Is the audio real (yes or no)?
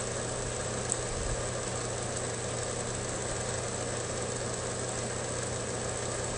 yes